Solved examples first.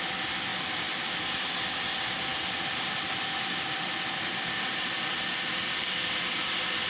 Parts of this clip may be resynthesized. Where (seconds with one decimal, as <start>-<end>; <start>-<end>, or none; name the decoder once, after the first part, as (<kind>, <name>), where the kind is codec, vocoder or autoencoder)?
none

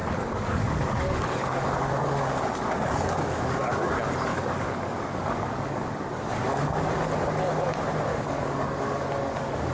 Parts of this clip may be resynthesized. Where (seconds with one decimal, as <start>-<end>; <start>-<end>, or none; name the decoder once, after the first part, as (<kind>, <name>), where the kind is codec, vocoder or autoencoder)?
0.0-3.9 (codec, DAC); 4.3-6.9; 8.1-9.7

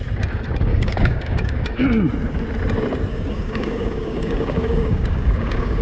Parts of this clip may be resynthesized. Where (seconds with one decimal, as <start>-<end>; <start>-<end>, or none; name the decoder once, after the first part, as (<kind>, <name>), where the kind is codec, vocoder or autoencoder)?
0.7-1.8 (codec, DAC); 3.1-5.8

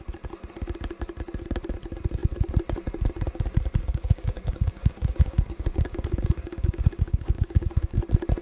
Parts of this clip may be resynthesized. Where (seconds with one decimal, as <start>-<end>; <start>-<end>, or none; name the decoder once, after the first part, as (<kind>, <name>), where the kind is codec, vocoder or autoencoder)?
3.8-8.0 (codec, DAC)

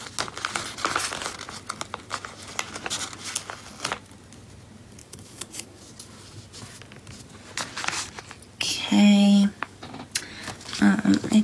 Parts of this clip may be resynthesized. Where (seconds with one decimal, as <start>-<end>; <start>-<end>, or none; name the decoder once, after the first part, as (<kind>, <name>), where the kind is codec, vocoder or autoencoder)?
5.0-5.8 (codec, DAC); 8.7-9.9; 10.4-11.4

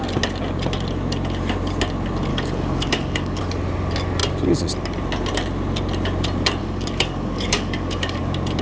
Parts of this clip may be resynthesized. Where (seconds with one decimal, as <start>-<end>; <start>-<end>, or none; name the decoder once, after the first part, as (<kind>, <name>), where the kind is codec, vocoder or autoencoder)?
2.3-3.4 (codec, DAC); 6.6-8.2

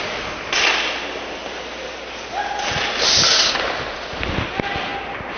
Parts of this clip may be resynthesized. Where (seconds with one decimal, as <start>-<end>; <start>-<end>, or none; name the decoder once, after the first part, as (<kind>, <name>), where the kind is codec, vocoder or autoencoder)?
none